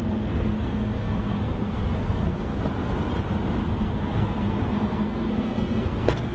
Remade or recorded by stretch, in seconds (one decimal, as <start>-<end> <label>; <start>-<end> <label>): 0.0-2.5 remade; 2.5-3.8 recorded; 3.8-6.3 remade